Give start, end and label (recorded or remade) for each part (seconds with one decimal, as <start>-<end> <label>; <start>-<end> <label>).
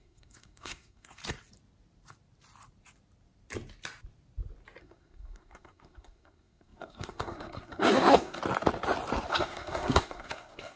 0.0-1.2 remade; 1.2-4.8 recorded; 4.8-8.4 remade; 8.4-9.3 recorded; 9.3-10.8 remade